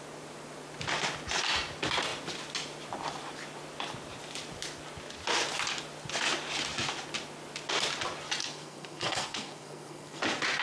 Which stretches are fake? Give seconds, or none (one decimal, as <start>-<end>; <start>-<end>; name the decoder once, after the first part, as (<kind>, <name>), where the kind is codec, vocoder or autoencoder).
8.4-10.2 (codec, SNAC)